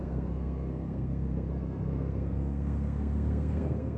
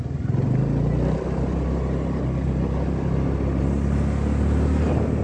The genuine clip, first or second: second